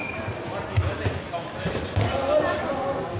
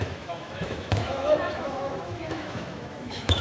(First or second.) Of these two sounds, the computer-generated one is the second